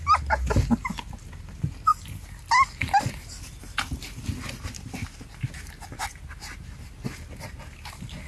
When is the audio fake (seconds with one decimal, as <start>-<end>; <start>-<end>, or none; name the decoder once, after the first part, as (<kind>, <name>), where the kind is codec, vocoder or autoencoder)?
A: none